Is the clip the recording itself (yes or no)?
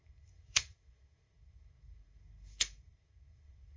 no